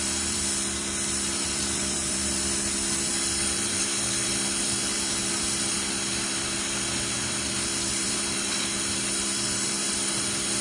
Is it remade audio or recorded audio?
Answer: remade